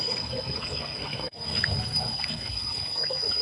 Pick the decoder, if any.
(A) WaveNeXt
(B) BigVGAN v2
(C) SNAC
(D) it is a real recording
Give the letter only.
C